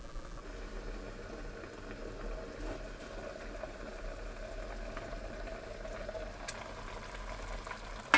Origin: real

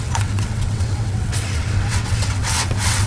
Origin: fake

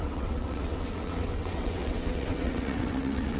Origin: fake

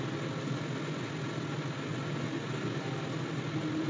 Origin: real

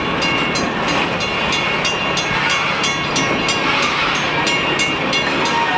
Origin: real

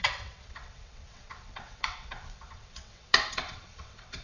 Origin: fake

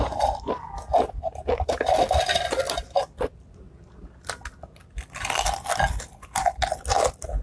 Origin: real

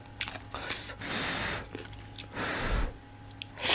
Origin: real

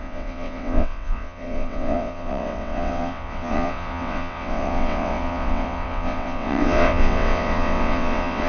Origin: fake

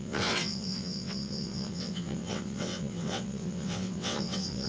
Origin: fake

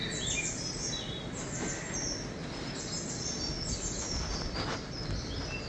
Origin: real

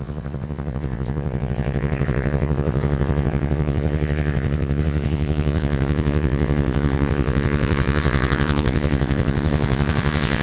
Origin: fake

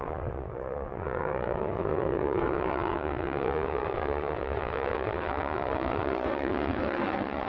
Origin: fake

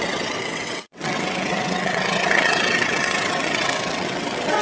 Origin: fake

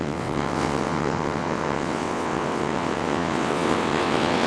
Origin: fake